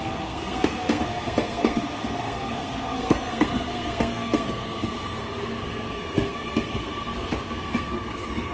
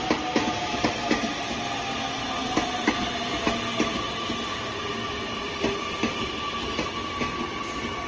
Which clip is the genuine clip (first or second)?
second